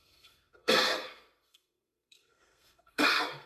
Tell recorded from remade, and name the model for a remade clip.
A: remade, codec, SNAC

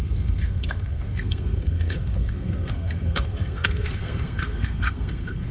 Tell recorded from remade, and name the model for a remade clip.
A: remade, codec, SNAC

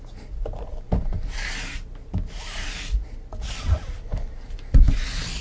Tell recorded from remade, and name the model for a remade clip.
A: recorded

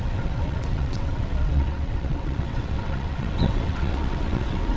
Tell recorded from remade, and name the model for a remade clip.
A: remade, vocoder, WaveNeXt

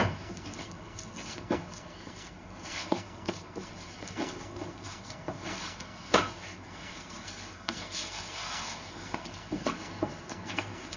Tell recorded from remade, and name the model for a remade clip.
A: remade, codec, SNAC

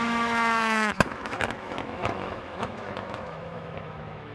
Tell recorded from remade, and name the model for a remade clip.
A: remade, autoencoder, DAC-VAE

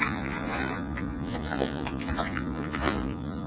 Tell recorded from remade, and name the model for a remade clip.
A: remade, vocoder, Vocos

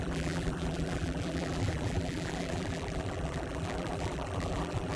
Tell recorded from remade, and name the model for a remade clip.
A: remade, vocoder, BigVGAN v2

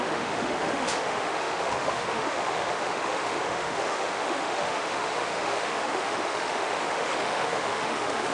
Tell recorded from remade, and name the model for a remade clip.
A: remade, autoencoder, DAC-VAE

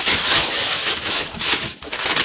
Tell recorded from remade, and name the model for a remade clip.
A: remade, autoencoder, DAC-VAE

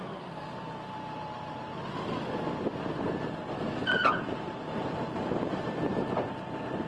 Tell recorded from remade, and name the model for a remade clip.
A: recorded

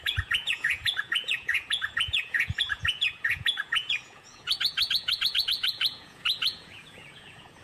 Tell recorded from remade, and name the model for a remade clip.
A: remade, vocoder, Vocos